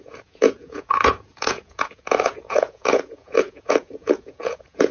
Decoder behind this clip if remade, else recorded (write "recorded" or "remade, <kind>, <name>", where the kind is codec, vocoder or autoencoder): remade, vocoder, Vocos